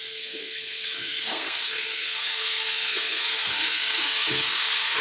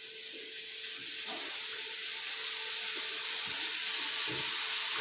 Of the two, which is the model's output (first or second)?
first